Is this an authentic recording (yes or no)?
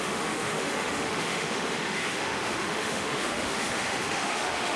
no